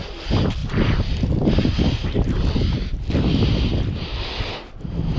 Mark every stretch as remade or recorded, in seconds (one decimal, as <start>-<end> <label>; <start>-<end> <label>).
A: 0.0-5.2 recorded